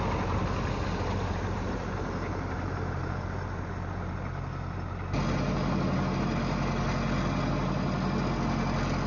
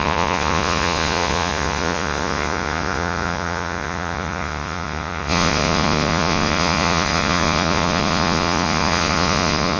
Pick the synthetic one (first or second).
second